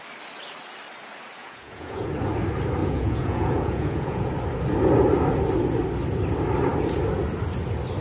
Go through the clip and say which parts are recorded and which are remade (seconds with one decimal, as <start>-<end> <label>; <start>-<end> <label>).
0.0-1.4 recorded; 1.4-2.1 remade; 2.1-2.8 recorded; 2.8-4.3 remade; 4.3-8.0 recorded